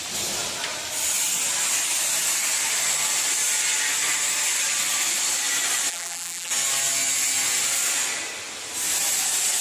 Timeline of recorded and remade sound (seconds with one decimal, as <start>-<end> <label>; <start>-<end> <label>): 0.0-5.9 recorded; 5.9-6.5 remade; 6.5-9.6 recorded